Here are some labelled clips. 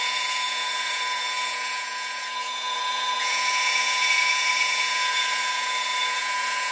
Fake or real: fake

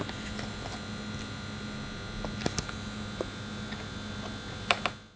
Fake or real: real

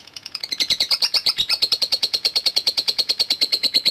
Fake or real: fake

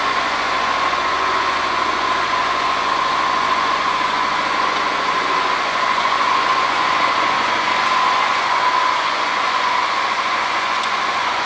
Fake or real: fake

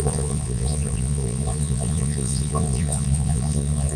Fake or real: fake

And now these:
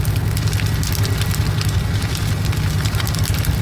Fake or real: real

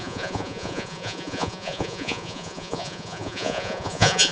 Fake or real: fake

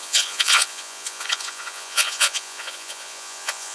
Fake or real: fake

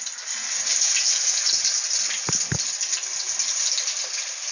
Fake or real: real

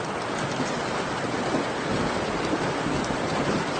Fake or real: real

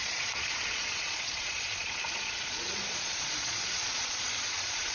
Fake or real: fake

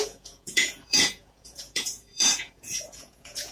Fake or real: fake